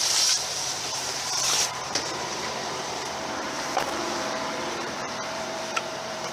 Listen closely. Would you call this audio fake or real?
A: fake